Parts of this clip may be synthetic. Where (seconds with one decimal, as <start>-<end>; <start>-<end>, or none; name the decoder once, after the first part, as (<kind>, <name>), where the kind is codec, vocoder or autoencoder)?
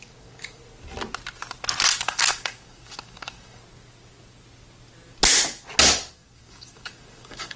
0.0-0.6 (codec, DAC); 2.0-3.6; 6.1-7.6